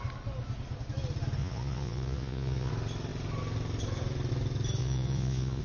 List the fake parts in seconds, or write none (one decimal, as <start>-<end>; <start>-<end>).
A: 1.4-2.7; 4.8-5.6